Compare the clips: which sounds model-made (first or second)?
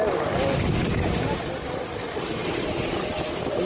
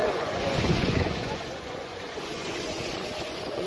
second